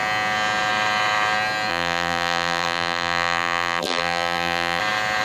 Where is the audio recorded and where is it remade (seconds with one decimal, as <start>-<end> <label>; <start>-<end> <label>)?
0.0-1.7 recorded; 1.7-4.8 remade; 4.8-5.2 recorded